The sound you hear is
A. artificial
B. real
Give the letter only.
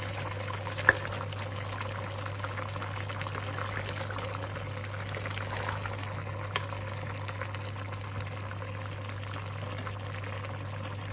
B